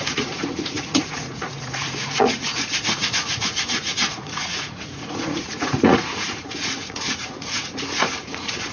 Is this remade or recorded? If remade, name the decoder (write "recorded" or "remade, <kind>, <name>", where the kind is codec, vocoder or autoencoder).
remade, vocoder, Vocos